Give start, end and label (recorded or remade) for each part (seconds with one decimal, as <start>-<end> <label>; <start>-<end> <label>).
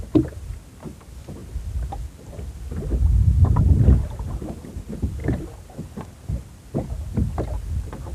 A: 0.0-8.1 recorded